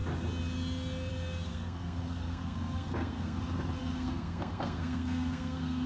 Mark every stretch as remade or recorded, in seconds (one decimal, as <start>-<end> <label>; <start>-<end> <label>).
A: 0.0-1.5 recorded; 1.5-3.4 remade; 3.4-3.8 recorded; 3.8-5.9 remade